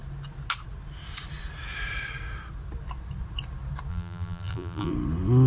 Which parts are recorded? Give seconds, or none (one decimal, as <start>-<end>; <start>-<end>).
0.0-3.9; 4.9-5.5